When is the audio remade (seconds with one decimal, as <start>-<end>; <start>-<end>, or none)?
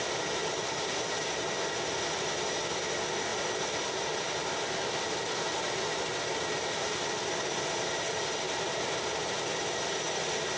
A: none